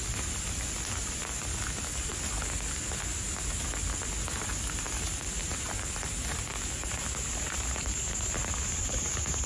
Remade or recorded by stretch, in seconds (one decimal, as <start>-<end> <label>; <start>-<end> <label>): 0.0-9.5 recorded

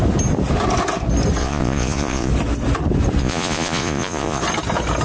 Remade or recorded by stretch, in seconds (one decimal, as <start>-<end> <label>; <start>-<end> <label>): 0.0-1.4 recorded; 1.4-2.3 remade; 2.3-3.2 recorded; 3.2-4.4 remade; 4.4-5.0 recorded

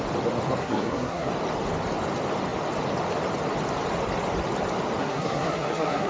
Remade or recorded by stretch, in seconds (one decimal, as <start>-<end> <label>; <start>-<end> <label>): 0.0-0.6 recorded; 0.6-1.3 remade; 1.3-5.0 recorded; 5.0-6.1 remade

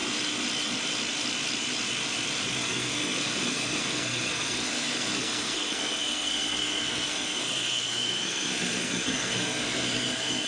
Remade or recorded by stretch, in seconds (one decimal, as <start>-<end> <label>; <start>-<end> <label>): 0.0-2.6 recorded; 2.6-10.5 remade

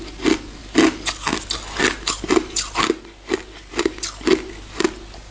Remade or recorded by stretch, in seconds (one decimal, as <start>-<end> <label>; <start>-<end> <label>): 0.0-5.3 recorded

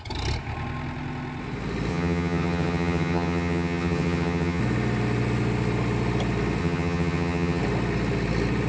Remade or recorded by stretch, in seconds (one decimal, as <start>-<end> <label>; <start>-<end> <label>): 0.0-1.9 recorded; 1.9-4.6 remade; 4.6-6.6 recorded; 6.6-7.6 remade; 7.6-8.7 recorded

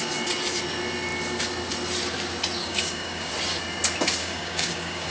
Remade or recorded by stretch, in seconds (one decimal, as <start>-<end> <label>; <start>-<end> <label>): 0.0-2.6 recorded; 2.6-3.3 remade; 3.3-4.2 recorded; 4.2-5.1 remade